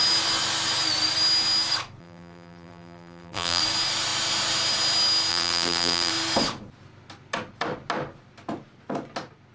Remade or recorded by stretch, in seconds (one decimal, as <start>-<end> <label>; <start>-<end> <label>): 0.0-2.0 recorded; 2.0-3.6 remade; 3.6-5.3 recorded; 5.3-6.1 remade; 6.1-9.5 recorded